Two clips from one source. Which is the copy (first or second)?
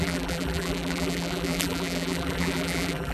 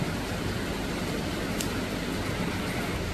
first